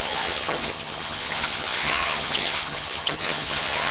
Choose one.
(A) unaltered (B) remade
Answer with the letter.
B